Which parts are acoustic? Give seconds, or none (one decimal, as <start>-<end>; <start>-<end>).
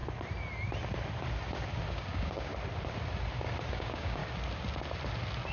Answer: 0.0-1.9; 2.5-3.7; 4.2-5.5